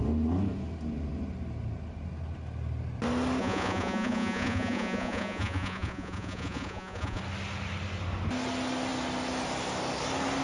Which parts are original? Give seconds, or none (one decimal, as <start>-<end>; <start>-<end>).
0.0-3.4; 7.2-10.4

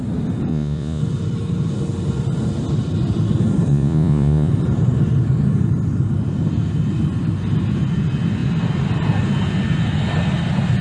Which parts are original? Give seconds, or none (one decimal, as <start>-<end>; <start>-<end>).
0.0-0.5; 1.0-3.7; 4.5-10.8

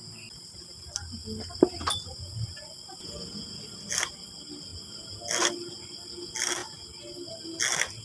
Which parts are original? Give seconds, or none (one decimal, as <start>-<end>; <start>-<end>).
0.0-8.0

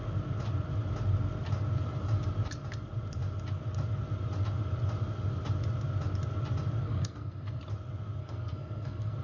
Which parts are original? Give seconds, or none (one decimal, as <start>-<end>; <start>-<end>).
0.0-6.8; 7.6-8.2